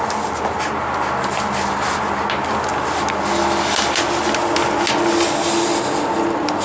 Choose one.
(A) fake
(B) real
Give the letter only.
B